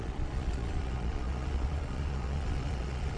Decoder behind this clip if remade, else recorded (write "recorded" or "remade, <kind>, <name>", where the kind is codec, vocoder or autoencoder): remade, vocoder, Vocos